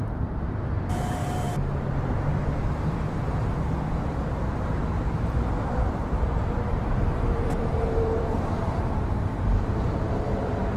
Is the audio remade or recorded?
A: remade